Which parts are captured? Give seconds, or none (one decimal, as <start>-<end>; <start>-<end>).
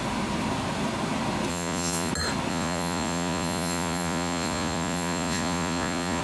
0.0-1.5; 2.1-2.5